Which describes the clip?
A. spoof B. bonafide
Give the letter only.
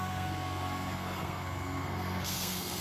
A